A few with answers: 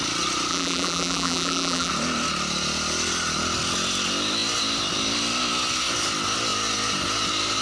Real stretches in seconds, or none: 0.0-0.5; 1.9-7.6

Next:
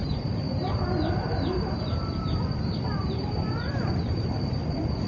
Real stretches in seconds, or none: 2.2-3.0; 4.2-5.1

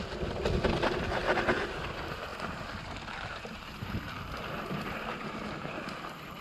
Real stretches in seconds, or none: 0.0-2.3; 5.7-6.4